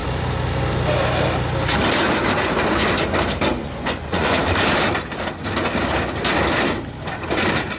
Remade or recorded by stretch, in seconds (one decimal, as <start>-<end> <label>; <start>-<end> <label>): 0.0-3.6 recorded; 3.6-4.4 remade; 4.4-7.8 recorded